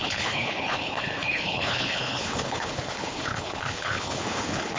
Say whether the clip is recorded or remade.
remade